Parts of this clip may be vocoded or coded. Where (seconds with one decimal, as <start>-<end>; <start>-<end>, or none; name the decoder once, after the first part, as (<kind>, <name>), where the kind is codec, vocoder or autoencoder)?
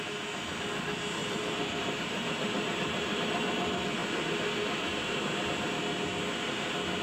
1.2-3.3 (vocoder, BigVGAN v2)